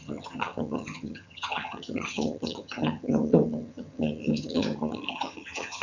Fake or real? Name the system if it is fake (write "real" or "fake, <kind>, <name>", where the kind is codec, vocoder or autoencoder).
fake, vocoder, HiFi-GAN